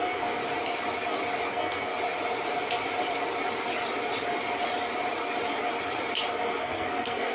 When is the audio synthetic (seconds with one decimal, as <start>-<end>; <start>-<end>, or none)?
0.0-0.4; 1.5-1.9; 6.3-7.3